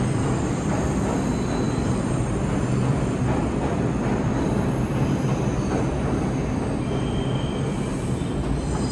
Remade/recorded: recorded